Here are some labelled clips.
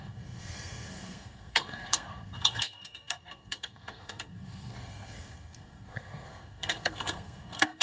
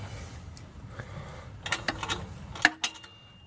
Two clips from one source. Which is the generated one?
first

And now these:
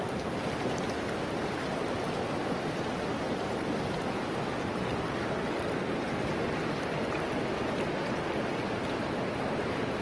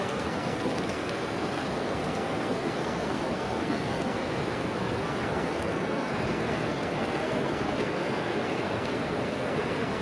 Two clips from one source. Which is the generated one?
second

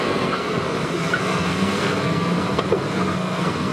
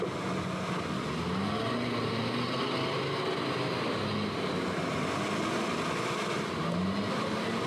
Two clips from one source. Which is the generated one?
first